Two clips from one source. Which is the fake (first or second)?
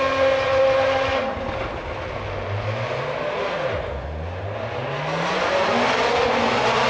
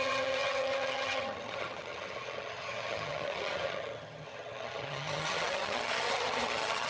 second